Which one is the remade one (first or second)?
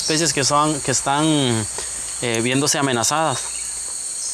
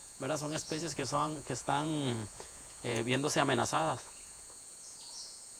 second